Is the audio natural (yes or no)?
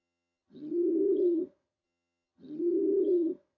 no